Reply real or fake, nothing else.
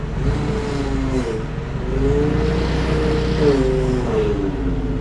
real